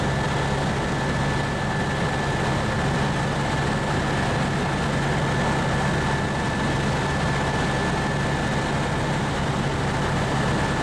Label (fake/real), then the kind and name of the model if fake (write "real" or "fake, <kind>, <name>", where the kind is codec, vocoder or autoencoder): real